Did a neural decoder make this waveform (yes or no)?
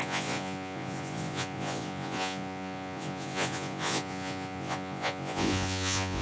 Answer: yes